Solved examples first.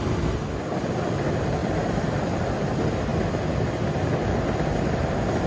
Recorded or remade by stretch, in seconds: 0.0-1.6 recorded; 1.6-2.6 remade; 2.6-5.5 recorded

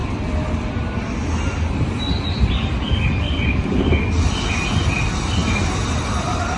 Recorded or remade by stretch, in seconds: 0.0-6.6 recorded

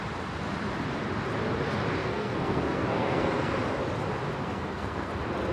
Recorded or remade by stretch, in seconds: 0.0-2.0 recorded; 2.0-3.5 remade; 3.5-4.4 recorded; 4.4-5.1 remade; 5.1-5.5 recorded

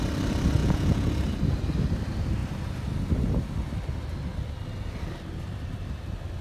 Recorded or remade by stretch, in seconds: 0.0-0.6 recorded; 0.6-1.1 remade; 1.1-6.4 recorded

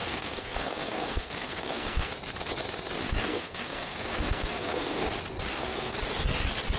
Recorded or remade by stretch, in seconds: 0.0-2.1 remade; 2.1-3.2 recorded; 3.2-5.0 remade; 5.0-5.5 recorded; 5.5-6.0 remade; 6.0-6.8 recorded

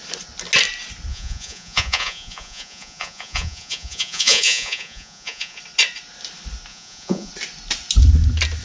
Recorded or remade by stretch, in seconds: 0.0-1.1 recorded; 1.1-5.6 remade; 5.6-6.7 recorded; 6.7-7.3 remade; 7.3-8.6 recorded

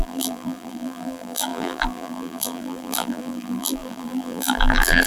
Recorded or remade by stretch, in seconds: 0.0-5.1 remade